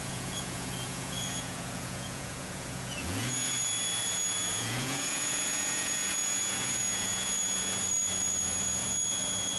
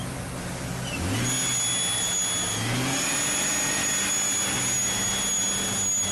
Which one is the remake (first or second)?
first